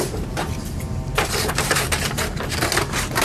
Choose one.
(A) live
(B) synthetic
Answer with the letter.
B